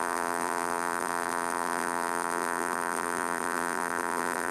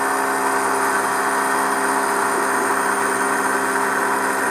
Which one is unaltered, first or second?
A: second